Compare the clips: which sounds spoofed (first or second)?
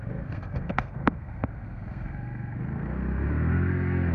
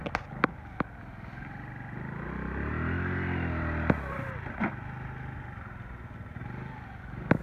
first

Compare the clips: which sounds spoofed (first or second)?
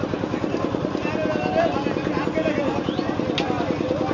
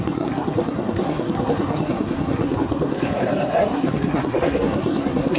second